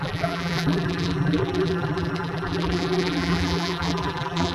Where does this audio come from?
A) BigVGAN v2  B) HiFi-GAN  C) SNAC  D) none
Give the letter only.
A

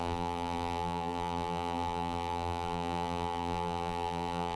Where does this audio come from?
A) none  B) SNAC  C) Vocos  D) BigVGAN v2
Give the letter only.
D